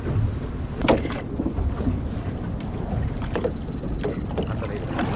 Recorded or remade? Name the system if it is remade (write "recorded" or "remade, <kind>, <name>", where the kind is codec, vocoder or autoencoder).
recorded